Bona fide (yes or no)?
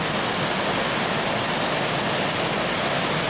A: yes